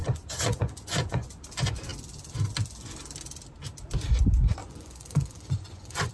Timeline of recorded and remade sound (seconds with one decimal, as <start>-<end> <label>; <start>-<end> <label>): 0.0-1.3 remade; 1.3-4.6 recorded; 4.6-6.1 remade